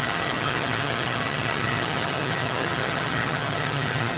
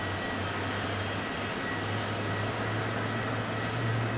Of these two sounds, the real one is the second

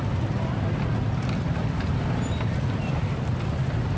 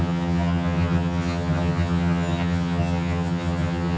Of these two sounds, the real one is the first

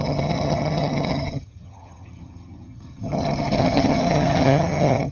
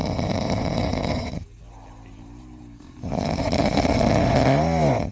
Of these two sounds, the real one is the second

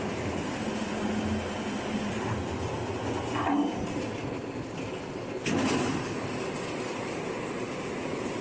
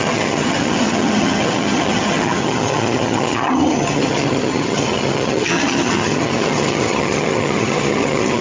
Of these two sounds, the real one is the first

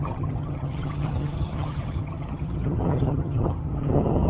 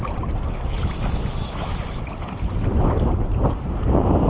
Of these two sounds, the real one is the second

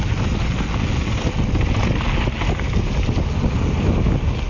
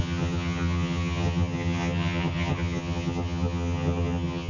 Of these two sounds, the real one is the first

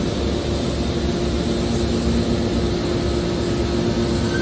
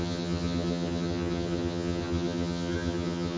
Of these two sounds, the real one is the first